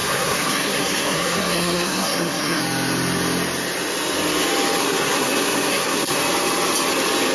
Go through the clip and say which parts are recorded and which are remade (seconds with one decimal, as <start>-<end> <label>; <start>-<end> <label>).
0.0-2.6 remade; 2.6-4.8 recorded; 4.8-6.2 remade; 6.2-7.3 recorded